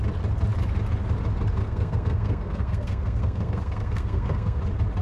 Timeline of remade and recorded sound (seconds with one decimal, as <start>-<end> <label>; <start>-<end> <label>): 0.0-1.6 recorded; 1.6-4.6 remade; 4.6-5.0 recorded

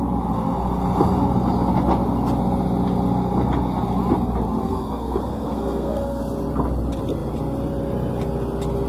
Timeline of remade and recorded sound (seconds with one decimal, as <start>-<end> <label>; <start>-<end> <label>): 0.0-4.6 recorded; 4.6-6.2 remade; 6.2-8.9 recorded

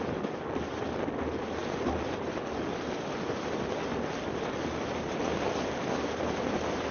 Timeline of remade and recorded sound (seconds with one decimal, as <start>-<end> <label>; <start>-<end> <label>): 0.0-6.9 recorded

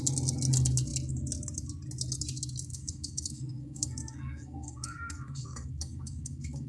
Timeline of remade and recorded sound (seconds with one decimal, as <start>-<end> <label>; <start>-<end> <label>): 0.0-2.7 recorded; 2.7-6.7 remade

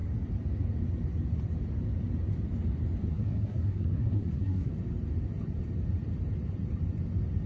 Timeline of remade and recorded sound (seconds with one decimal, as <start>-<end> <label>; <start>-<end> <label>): 0.0-3.0 recorded; 3.0-4.7 remade; 4.7-7.5 recorded

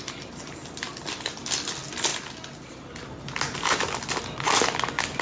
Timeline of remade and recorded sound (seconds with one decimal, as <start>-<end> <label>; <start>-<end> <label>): 0.0-5.2 recorded

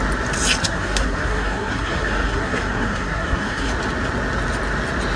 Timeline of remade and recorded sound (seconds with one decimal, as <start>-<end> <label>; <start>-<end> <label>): 0.0-0.6 recorded; 0.6-3.7 remade; 3.7-5.2 recorded

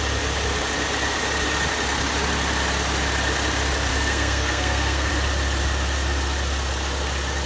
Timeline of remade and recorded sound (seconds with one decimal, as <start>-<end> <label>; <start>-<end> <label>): 0.0-3.9 recorded; 3.9-5.1 remade; 5.1-7.5 recorded